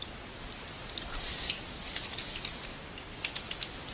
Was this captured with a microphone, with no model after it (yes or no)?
yes